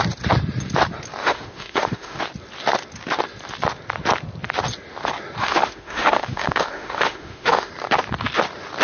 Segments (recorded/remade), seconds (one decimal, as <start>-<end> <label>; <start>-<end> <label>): 0.0-1.2 recorded; 1.2-2.2 remade; 2.2-5.4 recorded; 5.4-7.7 remade; 7.7-8.8 recorded

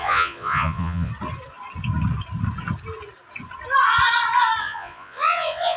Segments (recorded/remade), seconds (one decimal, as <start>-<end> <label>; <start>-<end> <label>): 0.0-1.1 remade; 1.1-4.6 recorded; 4.6-5.8 remade

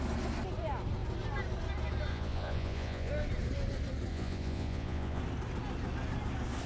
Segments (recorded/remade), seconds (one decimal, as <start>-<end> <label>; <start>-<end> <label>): 0.0-2.1 recorded; 2.1-3.1 remade; 3.1-4.1 recorded; 4.1-5.2 remade; 5.2-6.7 recorded

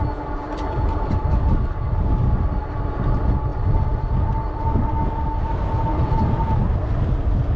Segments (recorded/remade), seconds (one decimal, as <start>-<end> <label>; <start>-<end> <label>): 0.0-7.6 recorded

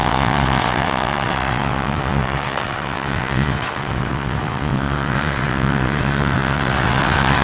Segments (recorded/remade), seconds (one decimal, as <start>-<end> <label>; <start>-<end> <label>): 0.0-7.4 remade

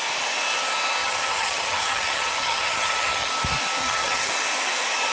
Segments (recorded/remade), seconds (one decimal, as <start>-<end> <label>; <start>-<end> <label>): 0.0-1.0 recorded; 1.0-3.3 remade; 3.3-3.8 recorded; 3.8-4.3 remade; 4.3-5.1 recorded

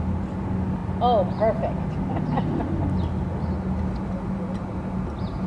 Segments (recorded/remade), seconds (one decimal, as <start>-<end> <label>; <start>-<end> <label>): 0.0-5.5 recorded